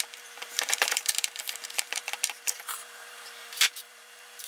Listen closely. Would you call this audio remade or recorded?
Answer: remade